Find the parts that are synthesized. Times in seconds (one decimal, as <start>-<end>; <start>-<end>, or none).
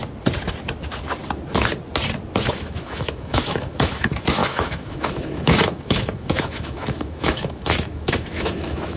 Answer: 2.5-9.0